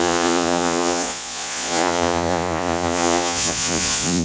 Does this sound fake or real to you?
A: fake